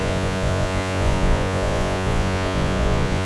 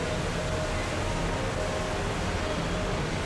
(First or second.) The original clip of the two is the second